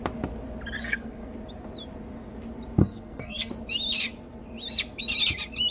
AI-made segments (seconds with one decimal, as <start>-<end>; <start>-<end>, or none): 0.8-1.3; 2.8-3.5